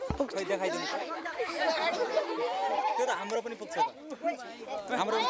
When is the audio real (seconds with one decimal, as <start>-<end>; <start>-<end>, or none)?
0.0-0.9; 1.6-5.3